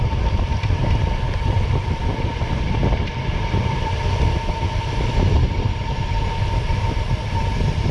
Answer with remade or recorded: remade